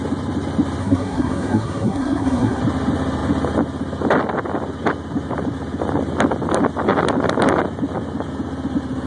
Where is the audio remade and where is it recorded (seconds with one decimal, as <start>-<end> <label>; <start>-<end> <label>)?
0.0-0.8 recorded; 0.8-2.6 remade; 2.6-9.1 recorded